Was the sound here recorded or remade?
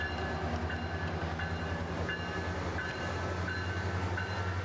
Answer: recorded